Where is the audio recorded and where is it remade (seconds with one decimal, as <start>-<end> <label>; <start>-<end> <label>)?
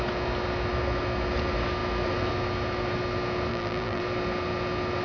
0.0-3.5 recorded; 3.5-4.0 remade; 4.0-5.0 recorded